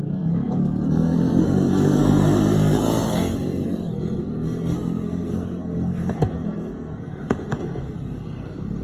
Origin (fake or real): fake